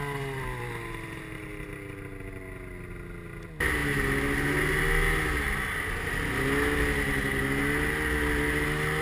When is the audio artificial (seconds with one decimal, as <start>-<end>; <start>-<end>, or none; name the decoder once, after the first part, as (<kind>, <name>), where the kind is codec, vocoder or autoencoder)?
none